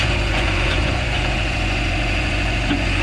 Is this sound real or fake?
fake